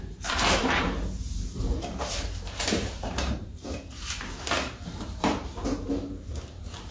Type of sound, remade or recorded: remade